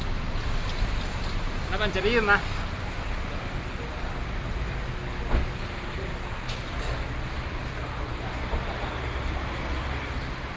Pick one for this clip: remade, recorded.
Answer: recorded